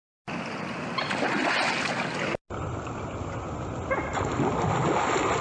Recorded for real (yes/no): yes